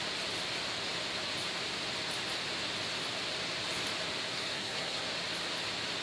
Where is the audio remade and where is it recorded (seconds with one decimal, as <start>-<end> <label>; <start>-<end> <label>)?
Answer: 0.0-4.3 recorded; 4.3-5.0 remade; 5.0-6.0 recorded